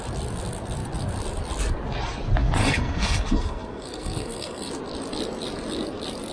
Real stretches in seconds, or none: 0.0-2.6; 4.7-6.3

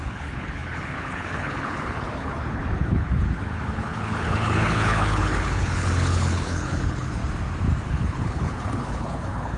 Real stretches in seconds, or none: 7.2-7.9

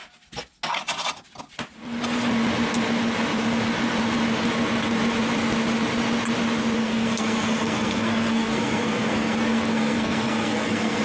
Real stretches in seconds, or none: 0.0-6.8

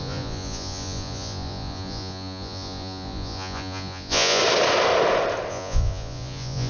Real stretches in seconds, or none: 4.4-5.5

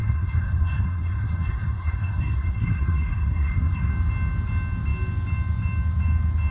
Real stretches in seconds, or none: 3.9-6.5

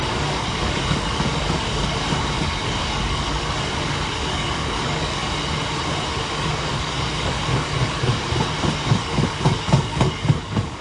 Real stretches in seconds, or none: 5.2-6.1; 8.1-8.9

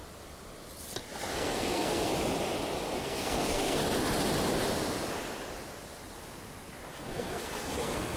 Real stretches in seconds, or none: 0.0-1.3; 2.1-3.0; 3.8-6.9

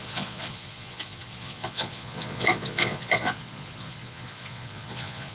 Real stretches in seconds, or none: none